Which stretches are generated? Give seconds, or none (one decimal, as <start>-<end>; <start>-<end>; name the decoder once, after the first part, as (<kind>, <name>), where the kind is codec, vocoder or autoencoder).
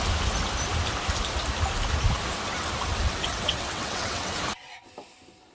2.9-4.3 (vocoder, WaveNeXt)